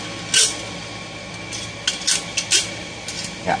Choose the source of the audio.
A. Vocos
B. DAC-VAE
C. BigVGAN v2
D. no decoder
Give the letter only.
D